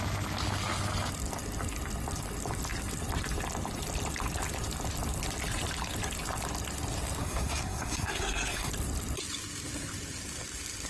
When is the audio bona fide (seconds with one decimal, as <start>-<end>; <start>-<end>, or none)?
0.0-7.2; 8.7-10.9